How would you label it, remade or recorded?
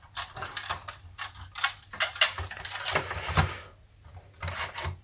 recorded